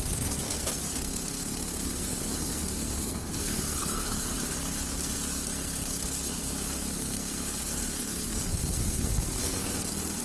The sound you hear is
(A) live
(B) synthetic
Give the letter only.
B